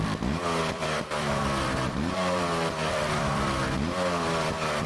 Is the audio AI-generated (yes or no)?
yes